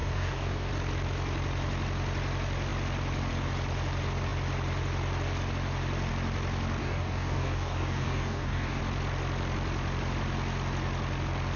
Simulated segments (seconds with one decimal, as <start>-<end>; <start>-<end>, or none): 0.0-0.7; 6.8-8.8